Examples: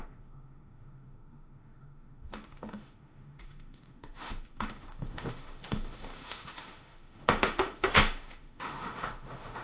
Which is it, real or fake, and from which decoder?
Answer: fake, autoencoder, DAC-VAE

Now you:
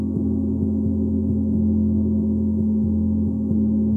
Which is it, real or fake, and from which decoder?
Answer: fake, autoencoder, DAC-VAE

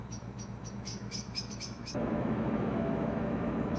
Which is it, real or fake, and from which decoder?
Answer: fake, autoencoder, DAC-VAE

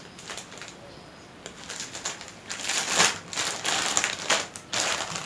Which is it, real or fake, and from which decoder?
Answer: real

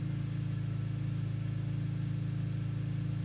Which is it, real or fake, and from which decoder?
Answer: real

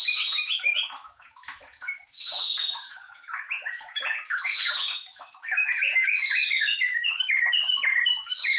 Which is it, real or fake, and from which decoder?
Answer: fake, autoencoder, DAC-VAE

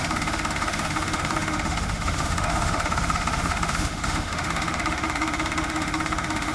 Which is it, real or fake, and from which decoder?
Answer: fake, autoencoder, DAC-VAE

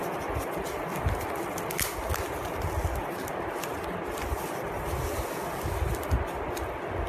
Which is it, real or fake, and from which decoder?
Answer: real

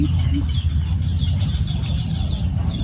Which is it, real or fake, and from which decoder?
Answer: real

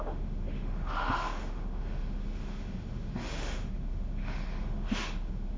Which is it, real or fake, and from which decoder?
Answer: fake, autoencoder, DAC-VAE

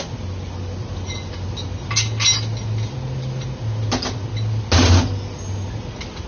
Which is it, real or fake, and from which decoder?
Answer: real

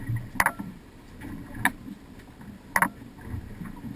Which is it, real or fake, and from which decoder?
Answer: real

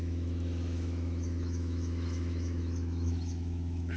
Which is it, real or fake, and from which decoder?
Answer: fake, autoencoder, DAC-VAE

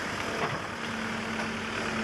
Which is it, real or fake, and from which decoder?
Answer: real